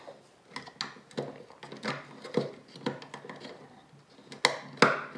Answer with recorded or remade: recorded